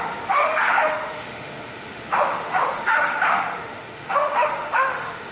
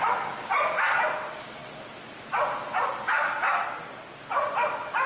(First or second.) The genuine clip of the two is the second